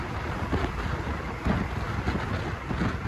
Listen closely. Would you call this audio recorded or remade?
recorded